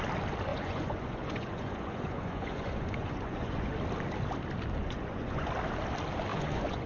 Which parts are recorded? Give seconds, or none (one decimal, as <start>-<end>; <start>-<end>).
0.0-0.5; 3.7-4.8; 5.5-6.3